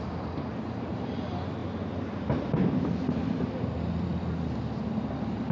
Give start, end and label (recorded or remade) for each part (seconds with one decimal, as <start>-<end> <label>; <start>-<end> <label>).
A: 0.0-1.6 remade; 1.6-2.8 recorded; 2.8-5.5 remade